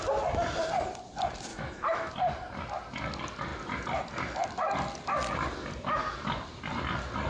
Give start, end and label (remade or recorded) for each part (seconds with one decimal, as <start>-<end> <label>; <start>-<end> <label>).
0.0-1.5 recorded; 1.5-2.1 remade; 2.1-7.3 recorded